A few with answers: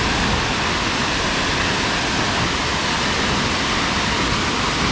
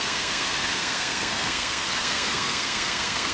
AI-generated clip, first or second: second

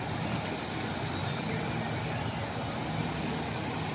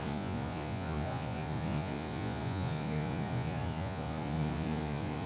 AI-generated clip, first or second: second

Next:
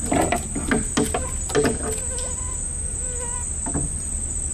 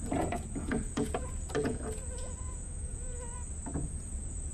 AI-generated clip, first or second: second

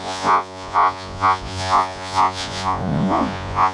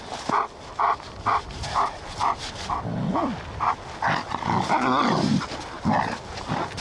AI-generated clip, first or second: first